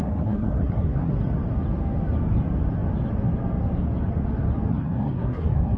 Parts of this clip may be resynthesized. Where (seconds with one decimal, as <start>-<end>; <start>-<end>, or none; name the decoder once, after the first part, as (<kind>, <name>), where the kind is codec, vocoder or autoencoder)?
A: 0.0-1.1 (codec, SNAC); 4.7-5.8